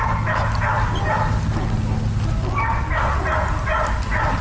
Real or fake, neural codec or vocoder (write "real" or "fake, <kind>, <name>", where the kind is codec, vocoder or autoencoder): real